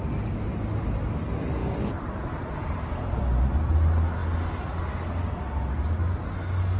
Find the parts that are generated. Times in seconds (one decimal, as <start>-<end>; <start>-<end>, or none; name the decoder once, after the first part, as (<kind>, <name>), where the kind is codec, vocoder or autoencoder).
1.6-3.2 (vocoder, BigVGAN v2)